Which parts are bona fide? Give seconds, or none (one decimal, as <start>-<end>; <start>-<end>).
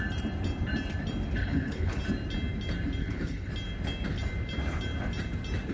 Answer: 0.0-1.4; 2.0-3.0; 3.5-5.7